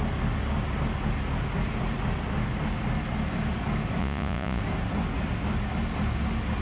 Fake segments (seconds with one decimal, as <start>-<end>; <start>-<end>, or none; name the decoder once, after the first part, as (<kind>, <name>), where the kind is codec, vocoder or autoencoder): 4.0-4.6 (vocoder, Vocos)